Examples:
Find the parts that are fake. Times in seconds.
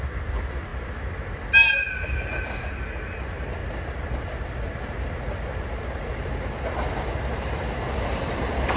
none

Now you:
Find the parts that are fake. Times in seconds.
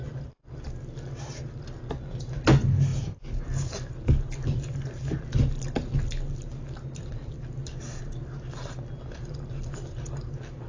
none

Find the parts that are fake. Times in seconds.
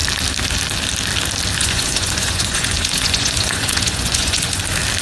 1.6-4.6 (vocoder, Vocos)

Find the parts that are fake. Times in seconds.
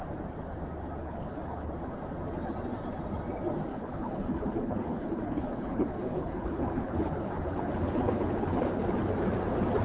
1.0-1.7 (codec, HILCodec); 3.7-8.8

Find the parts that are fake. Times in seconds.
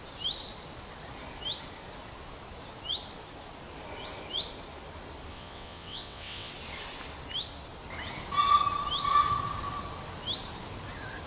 5.3-6.5 (vocoder, WaveNeXt)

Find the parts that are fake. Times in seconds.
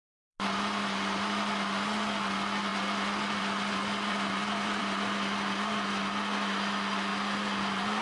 2.7-5.0 (vocoder, BigVGAN v2)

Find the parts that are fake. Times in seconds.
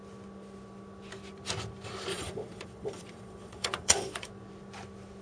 2.1-4.3 (vocoder, Vocos)